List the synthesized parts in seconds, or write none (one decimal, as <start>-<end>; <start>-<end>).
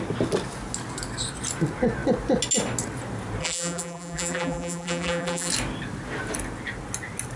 3.4-5.5